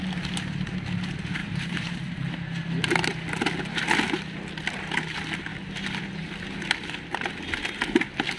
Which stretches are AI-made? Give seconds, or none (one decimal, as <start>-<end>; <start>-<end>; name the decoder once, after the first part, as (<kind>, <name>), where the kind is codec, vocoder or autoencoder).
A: 1.4-2.0 (vocoder, BigVGAN v2)